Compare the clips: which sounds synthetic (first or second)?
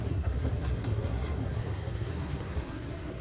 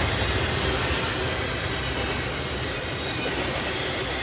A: first